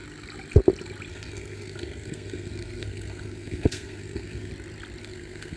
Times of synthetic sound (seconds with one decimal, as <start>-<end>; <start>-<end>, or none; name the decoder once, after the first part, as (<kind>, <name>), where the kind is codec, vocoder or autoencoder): 1.1-4.5 (codec, SNAC); 5.0-5.6